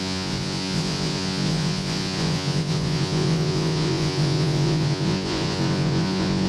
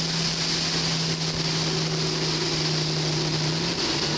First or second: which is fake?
first